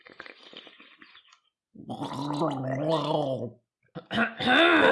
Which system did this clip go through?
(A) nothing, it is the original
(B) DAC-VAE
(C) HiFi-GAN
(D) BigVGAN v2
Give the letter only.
A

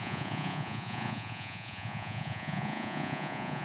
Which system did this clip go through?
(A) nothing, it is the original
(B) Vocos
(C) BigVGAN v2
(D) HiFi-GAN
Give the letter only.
B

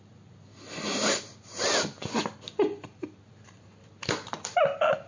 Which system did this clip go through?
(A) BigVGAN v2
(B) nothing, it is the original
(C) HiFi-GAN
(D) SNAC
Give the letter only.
B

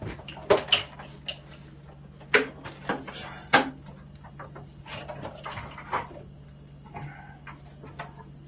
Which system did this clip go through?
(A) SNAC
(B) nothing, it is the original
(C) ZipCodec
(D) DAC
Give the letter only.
B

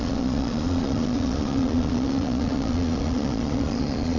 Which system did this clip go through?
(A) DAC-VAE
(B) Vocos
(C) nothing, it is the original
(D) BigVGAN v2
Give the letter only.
B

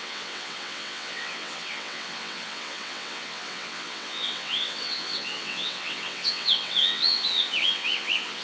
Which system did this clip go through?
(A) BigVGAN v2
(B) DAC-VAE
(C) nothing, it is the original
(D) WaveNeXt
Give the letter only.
D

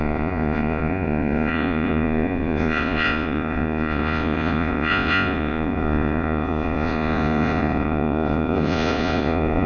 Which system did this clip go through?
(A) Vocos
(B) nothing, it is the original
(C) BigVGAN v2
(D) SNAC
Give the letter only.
A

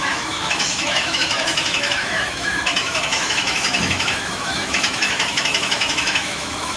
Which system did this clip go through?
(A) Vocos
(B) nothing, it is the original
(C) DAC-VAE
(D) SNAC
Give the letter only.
C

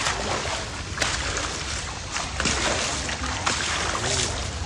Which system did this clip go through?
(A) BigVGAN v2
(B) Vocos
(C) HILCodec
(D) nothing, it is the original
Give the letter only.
D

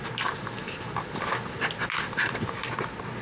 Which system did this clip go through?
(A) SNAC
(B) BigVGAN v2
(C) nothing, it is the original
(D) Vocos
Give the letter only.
C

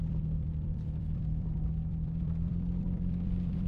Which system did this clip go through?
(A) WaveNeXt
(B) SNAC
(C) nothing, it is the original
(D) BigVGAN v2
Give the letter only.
D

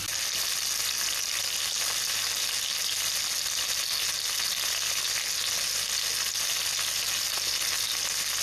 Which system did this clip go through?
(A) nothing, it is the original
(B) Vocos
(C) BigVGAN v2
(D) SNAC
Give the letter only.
A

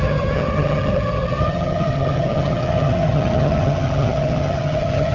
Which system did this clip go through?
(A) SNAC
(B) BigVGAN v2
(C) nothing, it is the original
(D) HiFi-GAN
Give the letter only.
D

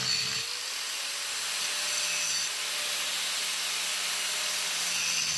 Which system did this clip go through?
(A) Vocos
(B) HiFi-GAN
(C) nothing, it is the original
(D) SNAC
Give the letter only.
C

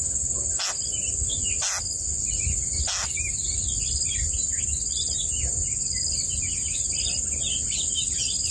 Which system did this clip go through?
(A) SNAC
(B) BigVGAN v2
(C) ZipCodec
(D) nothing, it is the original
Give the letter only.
D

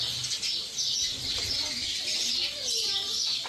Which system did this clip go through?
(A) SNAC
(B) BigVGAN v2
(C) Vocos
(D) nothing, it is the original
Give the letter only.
D